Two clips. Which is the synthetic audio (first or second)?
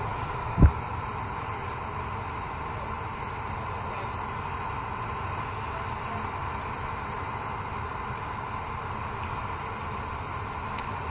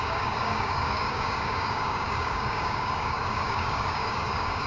second